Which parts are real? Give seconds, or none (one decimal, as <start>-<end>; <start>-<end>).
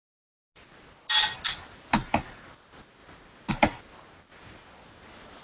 0.0-5.4